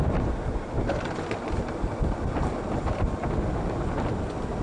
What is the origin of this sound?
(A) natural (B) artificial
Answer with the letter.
A